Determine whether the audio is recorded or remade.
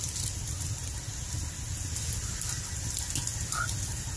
recorded